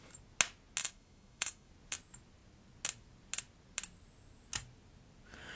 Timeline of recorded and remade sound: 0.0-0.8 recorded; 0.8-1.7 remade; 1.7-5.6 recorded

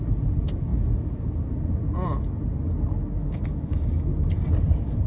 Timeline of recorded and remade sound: 0.0-3.2 recorded; 3.2-4.3 remade; 4.3-5.1 recorded

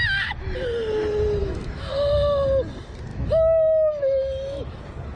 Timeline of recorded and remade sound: 0.0-1.4 recorded; 1.4-1.9 remade; 1.9-3.1 recorded; 3.1-4.8 remade; 4.8-5.2 recorded

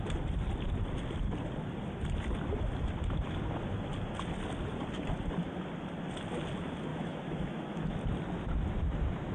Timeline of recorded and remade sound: 0.0-6.9 recorded; 6.9-7.8 remade; 7.8-9.3 recorded

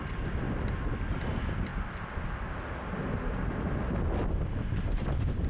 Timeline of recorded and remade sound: 0.0-5.5 recorded